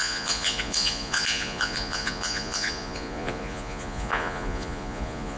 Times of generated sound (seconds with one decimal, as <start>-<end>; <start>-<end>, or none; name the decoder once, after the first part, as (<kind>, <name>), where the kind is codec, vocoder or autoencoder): 0.0-5.4 (vocoder, Vocos)